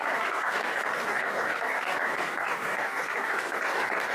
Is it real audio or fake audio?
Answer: fake